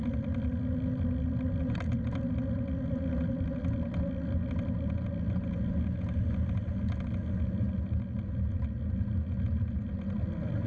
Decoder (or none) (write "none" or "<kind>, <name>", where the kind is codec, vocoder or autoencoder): none